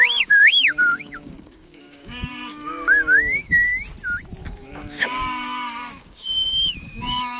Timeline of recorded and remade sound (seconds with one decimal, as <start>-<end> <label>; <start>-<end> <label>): 0.0-3.7 remade; 3.7-4.4 recorded; 4.4-7.4 remade